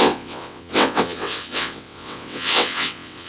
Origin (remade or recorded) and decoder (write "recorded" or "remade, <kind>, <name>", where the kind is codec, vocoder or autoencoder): remade, vocoder, WaveNeXt